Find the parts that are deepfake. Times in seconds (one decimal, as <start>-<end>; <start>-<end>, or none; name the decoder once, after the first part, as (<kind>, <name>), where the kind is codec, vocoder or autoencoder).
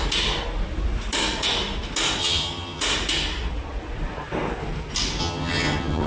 2.2-2.8 (vocoder, HiFi-GAN); 5.2-6.1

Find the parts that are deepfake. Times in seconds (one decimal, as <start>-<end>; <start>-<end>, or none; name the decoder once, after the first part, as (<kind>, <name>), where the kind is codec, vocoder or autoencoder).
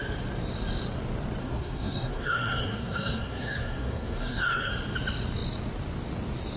1.4-4.7 (codec, SNAC)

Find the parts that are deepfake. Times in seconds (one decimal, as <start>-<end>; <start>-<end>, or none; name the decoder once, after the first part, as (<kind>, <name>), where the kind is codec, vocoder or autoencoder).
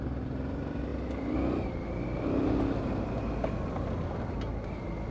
none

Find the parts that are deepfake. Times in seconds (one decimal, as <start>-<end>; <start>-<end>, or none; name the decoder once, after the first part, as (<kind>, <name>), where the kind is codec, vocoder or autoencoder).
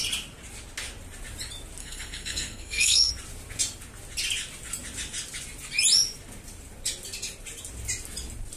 1.8-3.1 (codec, SNAC)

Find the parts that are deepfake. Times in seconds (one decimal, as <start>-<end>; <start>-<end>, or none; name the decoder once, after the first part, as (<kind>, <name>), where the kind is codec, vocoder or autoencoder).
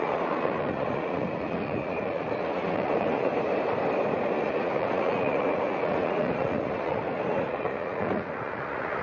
0.0-3.3 (vocoder, Vocos); 4.3-9.0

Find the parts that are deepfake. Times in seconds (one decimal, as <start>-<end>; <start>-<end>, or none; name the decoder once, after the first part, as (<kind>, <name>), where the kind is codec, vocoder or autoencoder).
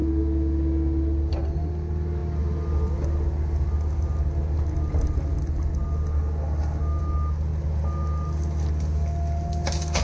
none